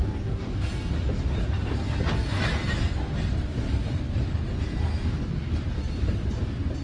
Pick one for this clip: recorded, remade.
recorded